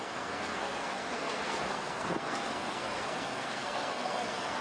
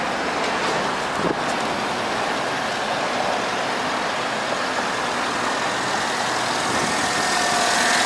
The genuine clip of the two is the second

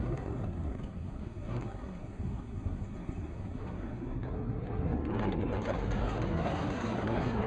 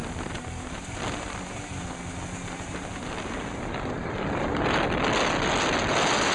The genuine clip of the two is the second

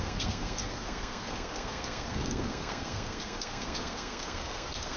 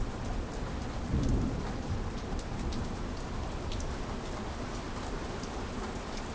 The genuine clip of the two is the second